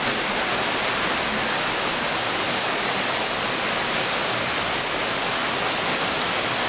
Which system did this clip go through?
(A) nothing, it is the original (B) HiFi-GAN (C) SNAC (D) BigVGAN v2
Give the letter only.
A